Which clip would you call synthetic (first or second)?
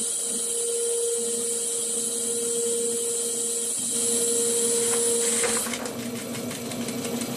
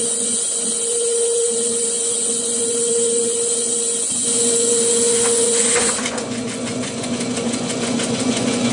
second